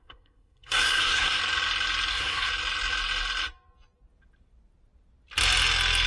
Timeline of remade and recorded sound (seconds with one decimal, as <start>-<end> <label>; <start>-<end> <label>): 0.0-1.4 remade; 1.4-2.1 recorded; 2.1-2.5 remade; 2.5-6.1 recorded

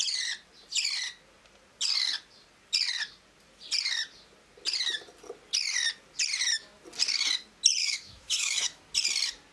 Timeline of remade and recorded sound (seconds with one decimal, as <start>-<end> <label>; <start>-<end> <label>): 0.0-7.8 recorded; 7.8-8.8 remade; 8.8-9.5 recorded